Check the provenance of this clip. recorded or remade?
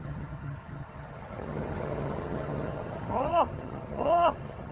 remade